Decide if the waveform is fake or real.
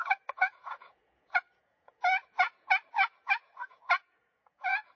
fake